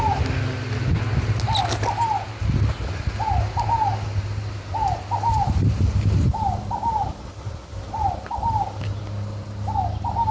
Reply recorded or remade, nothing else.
recorded